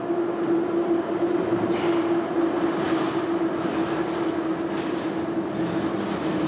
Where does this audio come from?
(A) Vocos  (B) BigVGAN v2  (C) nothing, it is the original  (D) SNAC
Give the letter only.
C